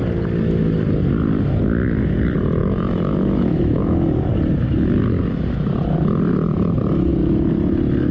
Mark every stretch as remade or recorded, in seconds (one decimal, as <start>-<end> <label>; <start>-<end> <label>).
0.0-2.6 recorded; 2.6-4.3 remade; 4.3-8.1 recorded